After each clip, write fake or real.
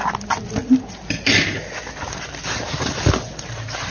real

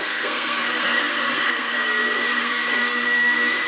fake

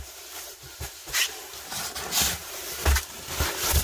real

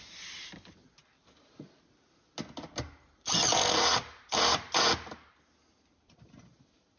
real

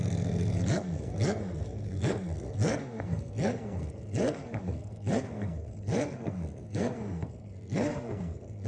fake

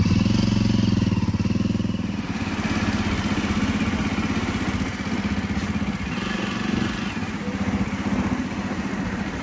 real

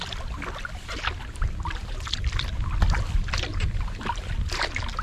real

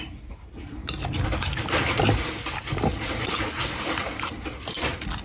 real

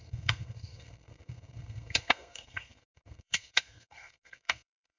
fake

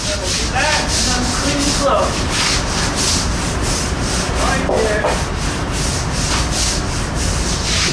real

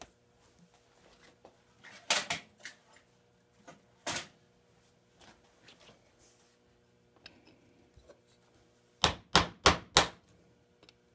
real